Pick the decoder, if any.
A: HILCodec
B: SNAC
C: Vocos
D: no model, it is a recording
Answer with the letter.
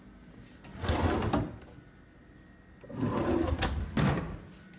D